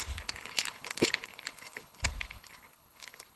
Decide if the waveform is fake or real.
fake